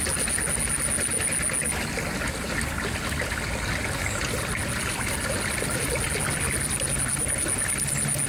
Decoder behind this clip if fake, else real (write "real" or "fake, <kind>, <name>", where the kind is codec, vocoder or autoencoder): real